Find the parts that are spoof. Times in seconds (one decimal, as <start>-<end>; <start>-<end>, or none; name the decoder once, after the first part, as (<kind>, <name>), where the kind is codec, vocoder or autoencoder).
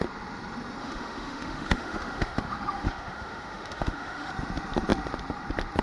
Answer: 0.8-4.3 (autoencoder, DAC-VAE)